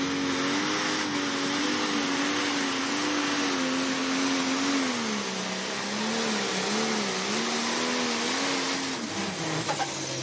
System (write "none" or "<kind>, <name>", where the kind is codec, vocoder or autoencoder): none